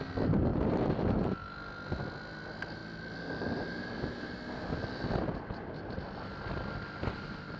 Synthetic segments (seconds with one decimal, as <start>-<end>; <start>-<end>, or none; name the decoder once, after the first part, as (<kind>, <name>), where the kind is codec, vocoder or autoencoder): 2.8-7.6 (vocoder, BigVGAN v2)